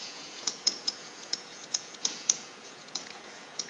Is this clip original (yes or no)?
no